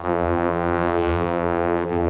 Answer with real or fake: fake